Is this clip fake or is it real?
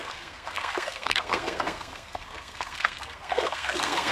fake